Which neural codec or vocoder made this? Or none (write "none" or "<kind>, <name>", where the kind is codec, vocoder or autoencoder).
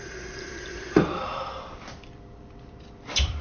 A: vocoder, BigVGAN v2